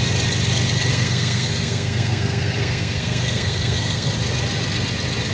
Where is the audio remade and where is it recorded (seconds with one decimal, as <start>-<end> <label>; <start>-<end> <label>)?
0.0-0.9 recorded; 0.9-4.1 remade; 4.1-5.3 recorded